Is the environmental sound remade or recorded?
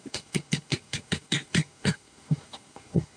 remade